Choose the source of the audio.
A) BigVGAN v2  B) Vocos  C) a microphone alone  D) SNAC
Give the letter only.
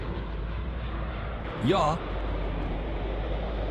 A